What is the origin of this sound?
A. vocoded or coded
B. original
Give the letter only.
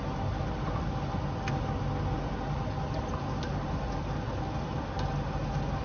B